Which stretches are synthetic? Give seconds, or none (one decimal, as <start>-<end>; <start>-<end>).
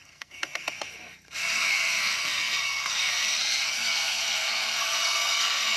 0.0-5.8